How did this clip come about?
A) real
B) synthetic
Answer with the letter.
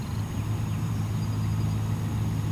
A